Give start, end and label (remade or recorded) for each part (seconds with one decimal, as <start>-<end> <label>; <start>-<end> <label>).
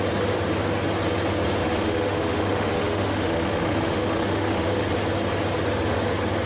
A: 0.0-1.6 recorded; 1.6-4.8 remade; 4.8-6.5 recorded